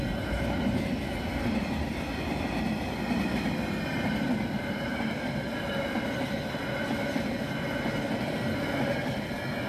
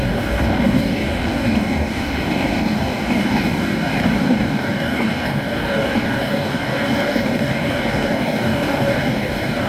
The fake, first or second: second